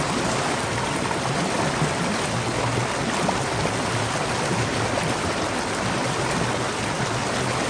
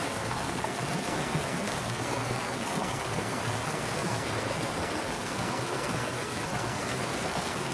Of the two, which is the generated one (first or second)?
second